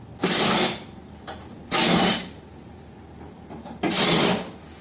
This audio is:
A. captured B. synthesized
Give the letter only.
A